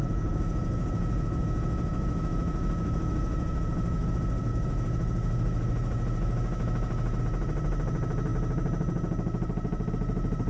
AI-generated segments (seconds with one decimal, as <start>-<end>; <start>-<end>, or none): 0.0-4.1; 4.5-7.2